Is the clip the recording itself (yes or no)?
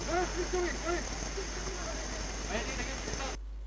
yes